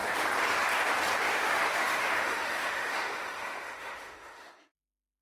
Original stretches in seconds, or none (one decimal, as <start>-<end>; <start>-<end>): 0.0-1.2